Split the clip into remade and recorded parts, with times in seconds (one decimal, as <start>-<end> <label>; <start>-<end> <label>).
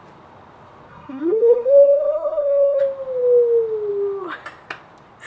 0.0-0.9 recorded; 0.9-2.8 remade; 2.8-5.3 recorded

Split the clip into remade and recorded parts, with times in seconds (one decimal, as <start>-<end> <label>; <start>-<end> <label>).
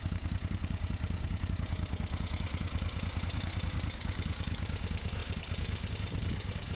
0.0-6.7 remade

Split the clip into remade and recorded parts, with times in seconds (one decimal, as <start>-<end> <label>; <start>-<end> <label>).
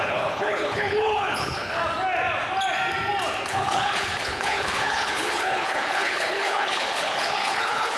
0.0-1.8 remade; 1.8-3.5 recorded; 3.5-8.0 remade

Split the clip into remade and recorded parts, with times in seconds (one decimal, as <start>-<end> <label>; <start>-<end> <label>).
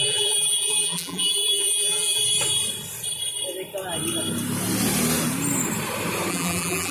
0.0-2.2 remade; 2.2-6.3 recorded; 6.3-6.9 remade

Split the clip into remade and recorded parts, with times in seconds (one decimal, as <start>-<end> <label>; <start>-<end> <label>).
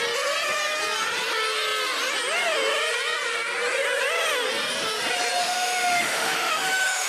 0.0-5.4 recorded; 5.4-7.1 remade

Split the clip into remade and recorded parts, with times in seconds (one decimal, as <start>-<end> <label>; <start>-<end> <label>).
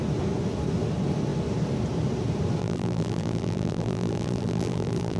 0.0-2.6 recorded; 2.6-5.2 remade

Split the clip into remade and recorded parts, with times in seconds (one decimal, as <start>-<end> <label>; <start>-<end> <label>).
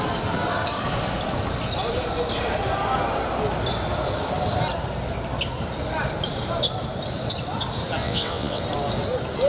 0.0-8.0 recorded; 8.0-8.6 remade; 8.6-9.5 recorded